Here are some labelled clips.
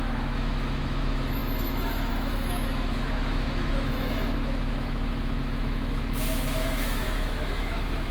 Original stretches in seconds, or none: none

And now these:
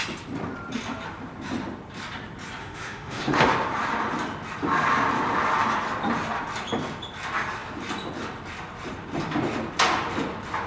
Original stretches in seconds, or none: 0.0-2.6; 3.5-10.7

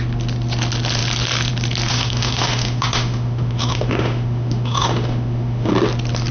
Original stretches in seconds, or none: 0.0-1.9; 5.7-6.3

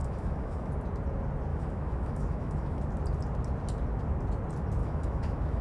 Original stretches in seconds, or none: 0.7-1.5; 2.8-4.8

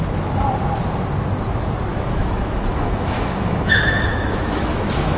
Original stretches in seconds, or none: 0.0-1.9

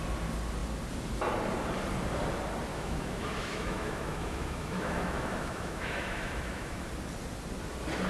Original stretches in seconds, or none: 0.0-2.7; 6.9-8.1

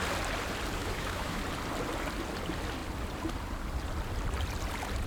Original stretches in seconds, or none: 0.0-0.8; 1.4-5.1